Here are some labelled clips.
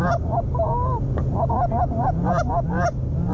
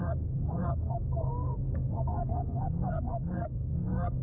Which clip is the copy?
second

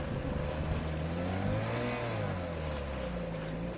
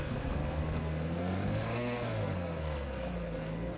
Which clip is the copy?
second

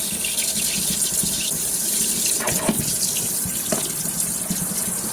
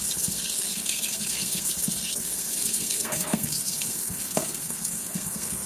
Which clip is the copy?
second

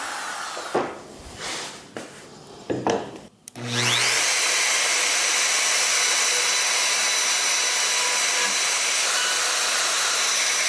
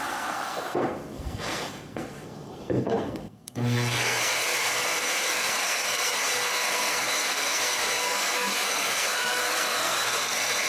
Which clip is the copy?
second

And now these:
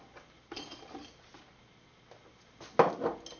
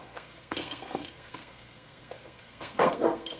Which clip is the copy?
second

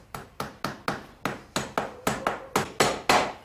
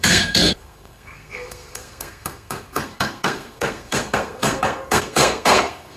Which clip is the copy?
second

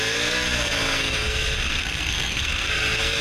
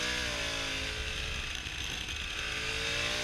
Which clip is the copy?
first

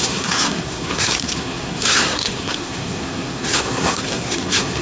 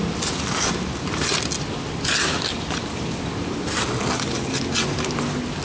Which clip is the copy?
first